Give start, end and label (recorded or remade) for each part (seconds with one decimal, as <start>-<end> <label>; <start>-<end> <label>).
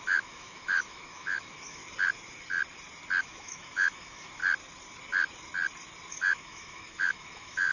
0.0-1.8 remade; 1.8-3.2 recorded; 3.2-4.4 remade; 4.4-6.1 recorded; 6.1-7.7 remade